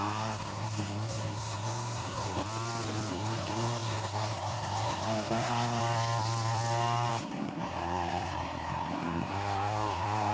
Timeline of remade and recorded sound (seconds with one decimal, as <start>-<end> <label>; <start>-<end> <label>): 0.0-2.4 remade; 2.4-3.1 recorded; 3.1-5.8 remade; 5.8-7.1 recorded; 7.1-10.3 remade